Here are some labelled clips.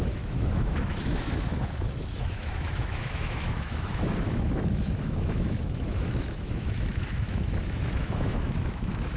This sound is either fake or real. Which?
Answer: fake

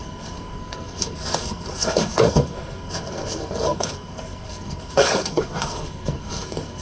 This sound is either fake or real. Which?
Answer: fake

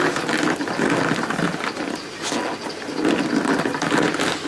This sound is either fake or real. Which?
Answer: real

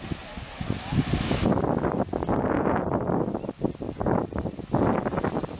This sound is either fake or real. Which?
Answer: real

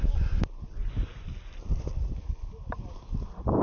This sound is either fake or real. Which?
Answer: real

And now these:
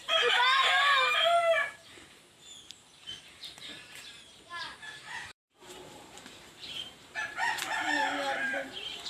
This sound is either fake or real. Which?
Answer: fake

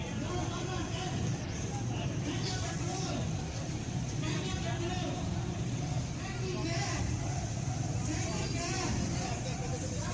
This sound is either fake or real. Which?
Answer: real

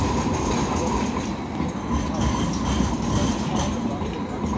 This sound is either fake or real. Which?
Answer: real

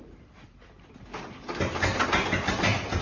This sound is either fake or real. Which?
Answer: real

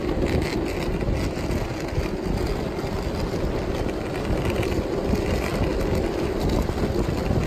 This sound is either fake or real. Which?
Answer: real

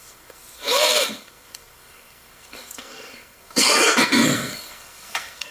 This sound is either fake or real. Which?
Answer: fake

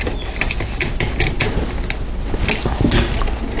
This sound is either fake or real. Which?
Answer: real